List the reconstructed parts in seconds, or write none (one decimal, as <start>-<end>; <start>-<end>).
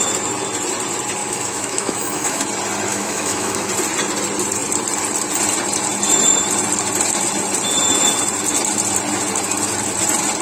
1.2-2.4; 2.9-3.7